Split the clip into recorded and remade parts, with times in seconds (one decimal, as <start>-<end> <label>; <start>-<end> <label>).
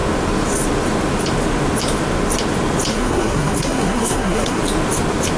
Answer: 0.0-2.9 recorded; 2.9-4.6 remade; 4.6-5.4 recorded